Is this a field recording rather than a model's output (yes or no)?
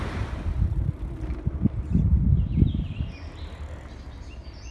yes